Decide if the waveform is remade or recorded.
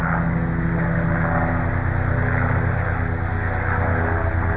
recorded